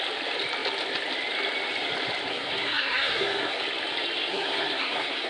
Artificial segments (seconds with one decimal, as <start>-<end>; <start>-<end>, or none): 2.3-3.6; 4.3-5.3